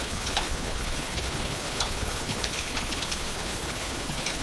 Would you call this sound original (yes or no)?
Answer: no